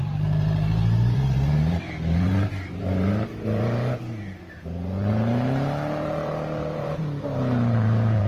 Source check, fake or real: fake